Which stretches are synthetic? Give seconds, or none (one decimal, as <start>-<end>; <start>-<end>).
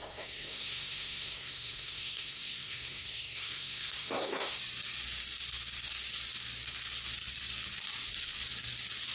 0.0-4.6